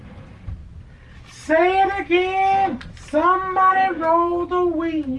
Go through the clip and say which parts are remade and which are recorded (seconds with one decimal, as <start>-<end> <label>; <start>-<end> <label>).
0.0-0.6 remade; 0.6-3.7 recorded; 3.7-5.2 remade